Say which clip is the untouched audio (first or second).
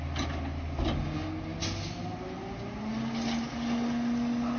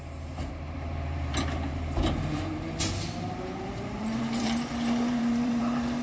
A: first